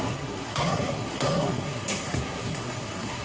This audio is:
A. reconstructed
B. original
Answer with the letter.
A